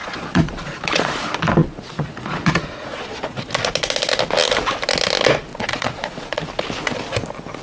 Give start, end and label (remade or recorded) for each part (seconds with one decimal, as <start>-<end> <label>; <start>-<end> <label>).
0.0-1.1 remade; 1.1-1.6 recorded; 1.6-3.5 remade; 3.5-5.5 recorded; 5.5-6.4 remade; 6.4-7.6 recorded